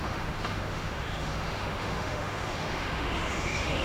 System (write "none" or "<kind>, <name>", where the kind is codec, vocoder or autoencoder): autoencoder, DAC-VAE